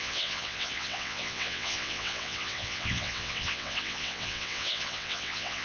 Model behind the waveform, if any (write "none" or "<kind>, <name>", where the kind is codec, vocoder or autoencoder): vocoder, WaveNeXt